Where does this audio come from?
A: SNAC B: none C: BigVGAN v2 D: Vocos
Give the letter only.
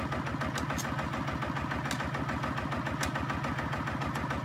B